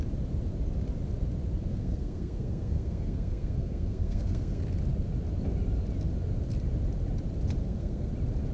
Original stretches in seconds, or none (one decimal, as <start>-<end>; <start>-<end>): 0.0-1.7; 4.6-7.6; 8.1-8.5